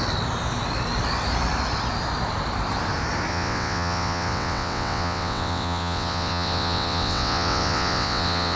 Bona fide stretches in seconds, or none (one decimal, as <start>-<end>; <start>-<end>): 0.0-3.3